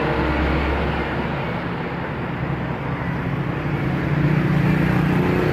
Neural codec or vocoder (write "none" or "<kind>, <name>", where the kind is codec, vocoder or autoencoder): none